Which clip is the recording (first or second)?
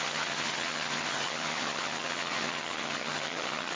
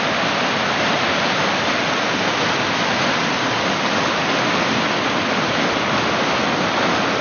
second